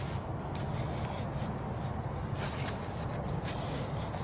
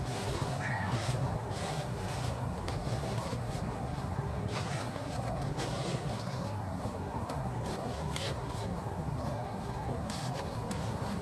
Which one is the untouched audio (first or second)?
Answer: first